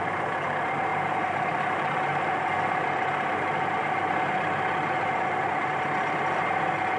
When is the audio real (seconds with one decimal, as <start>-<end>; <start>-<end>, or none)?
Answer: 0.0-7.0